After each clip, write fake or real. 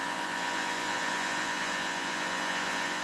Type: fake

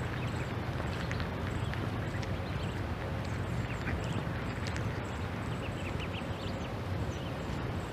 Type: real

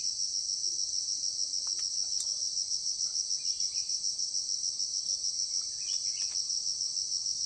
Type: real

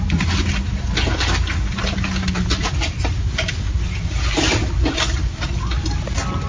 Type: real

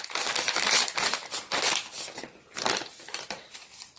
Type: real